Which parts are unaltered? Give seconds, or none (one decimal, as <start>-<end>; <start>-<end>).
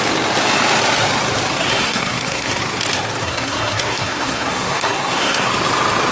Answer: 0.0-1.7; 2.6-3.2; 5.5-6.1